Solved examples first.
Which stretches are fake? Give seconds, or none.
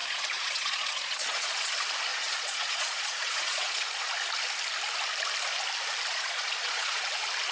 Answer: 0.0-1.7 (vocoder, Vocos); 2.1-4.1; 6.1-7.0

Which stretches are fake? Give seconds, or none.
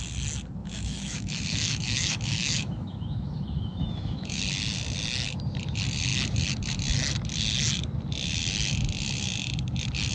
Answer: 0.6-4.4 (autoencoder, DAC-VAE)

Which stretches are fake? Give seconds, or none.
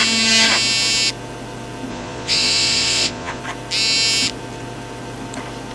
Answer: 1.9-3.4 (vocoder, Vocos)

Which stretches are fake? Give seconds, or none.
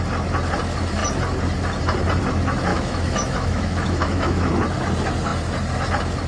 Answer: 2.7-4.5 (autoencoder, DAC-VAE)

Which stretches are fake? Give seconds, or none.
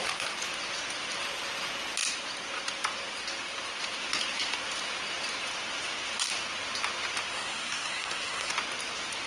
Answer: 7.3-8.5 (codec, SNAC)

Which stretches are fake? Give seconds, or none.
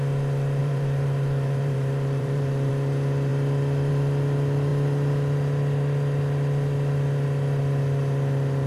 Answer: 0.6-2.7 (vocoder, BigVGAN v2)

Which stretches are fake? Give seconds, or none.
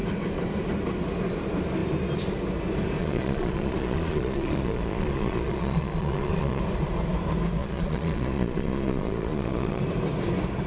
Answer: 3.0-6.6 (vocoder, Vocos); 7.6-9.8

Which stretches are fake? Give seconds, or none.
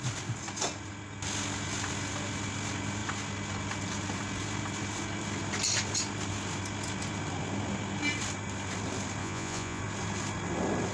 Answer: 9.2-9.8 (vocoder, Vocos)